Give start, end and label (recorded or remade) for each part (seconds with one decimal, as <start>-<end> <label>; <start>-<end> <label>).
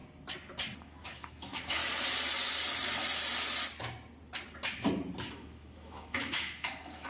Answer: 0.0-0.8 recorded; 0.8-1.8 remade; 1.8-5.3 recorded; 5.3-7.1 remade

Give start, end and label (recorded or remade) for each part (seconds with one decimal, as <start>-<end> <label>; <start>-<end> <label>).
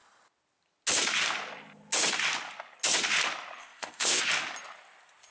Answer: 0.0-3.6 recorded; 3.6-4.3 remade; 4.3-5.3 recorded